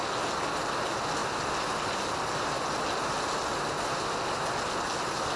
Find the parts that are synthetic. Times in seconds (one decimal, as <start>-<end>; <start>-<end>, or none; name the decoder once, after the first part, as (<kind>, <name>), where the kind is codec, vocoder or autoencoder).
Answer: none